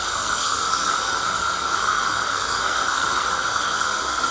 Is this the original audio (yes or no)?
no